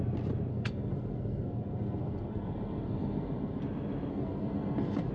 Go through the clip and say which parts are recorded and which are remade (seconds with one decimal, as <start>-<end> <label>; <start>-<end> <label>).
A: 0.0-0.5 recorded; 0.5-3.6 remade; 3.6-4.1 recorded; 4.1-5.1 remade